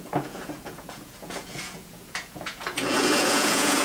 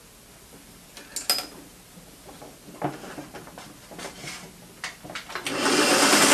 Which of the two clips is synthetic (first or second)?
first